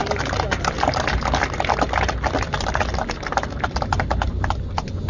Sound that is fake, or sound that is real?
real